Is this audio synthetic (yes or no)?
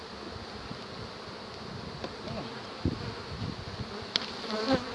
no